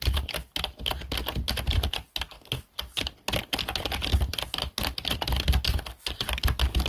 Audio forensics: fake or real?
real